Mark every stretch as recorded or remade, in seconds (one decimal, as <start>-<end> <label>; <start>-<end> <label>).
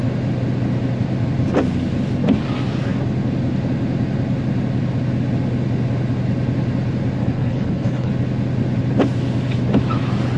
0.0-7.2 recorded; 7.2-8.1 remade; 8.1-10.4 recorded